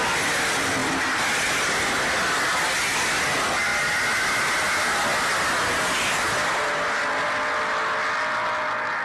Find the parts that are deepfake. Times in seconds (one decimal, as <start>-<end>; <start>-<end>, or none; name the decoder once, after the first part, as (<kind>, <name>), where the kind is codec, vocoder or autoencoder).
none